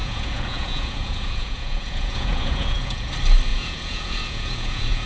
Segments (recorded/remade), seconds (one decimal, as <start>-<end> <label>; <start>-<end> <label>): 0.0-3.1 remade; 3.1-3.5 recorded; 3.5-5.1 remade